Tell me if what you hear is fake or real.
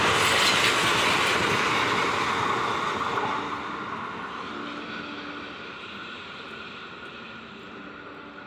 real